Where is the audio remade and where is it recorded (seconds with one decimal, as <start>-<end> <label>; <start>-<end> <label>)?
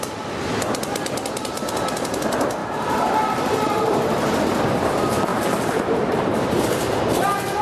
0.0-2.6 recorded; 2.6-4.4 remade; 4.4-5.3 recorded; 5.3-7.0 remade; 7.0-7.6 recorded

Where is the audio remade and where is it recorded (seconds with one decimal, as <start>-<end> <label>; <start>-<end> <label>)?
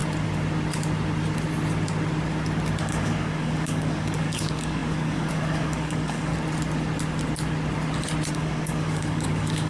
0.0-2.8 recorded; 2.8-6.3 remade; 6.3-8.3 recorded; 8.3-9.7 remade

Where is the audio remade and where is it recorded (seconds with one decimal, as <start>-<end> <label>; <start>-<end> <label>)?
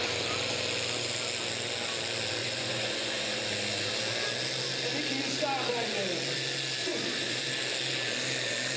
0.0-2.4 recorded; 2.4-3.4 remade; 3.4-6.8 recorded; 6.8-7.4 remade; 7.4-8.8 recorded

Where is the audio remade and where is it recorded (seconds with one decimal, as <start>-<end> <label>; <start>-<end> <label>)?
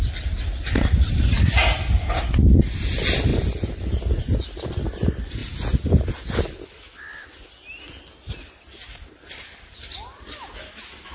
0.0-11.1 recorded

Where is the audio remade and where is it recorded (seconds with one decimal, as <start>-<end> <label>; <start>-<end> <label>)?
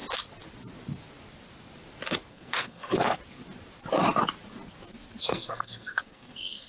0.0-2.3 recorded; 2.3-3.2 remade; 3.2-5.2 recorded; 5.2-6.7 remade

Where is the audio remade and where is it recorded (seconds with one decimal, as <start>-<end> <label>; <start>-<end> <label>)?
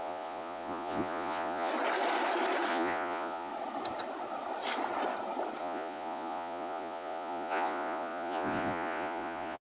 0.0-1.7 remade; 1.7-2.7 recorded; 2.7-3.5 remade; 3.5-5.6 recorded; 5.6-9.6 remade